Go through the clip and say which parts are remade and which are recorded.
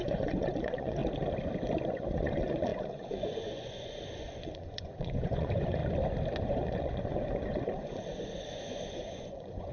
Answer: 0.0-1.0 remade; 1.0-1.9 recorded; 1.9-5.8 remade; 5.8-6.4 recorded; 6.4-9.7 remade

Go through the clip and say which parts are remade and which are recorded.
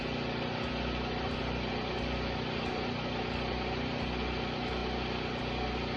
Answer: 0.0-6.0 recorded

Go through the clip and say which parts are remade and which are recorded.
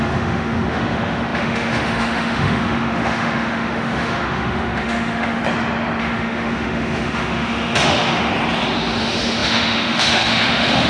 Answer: 0.0-5.4 remade; 5.4-6.0 recorded; 6.0-8.3 remade; 8.3-9.0 recorded; 9.0-10.9 remade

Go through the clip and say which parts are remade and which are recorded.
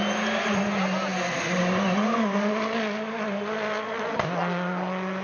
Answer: 0.0-1.1 recorded; 1.1-4.0 remade; 4.0-5.2 recorded